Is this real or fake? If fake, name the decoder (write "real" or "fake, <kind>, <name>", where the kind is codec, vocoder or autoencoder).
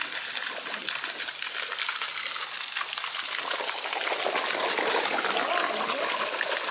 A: real